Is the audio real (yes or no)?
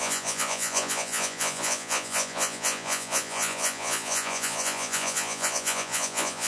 no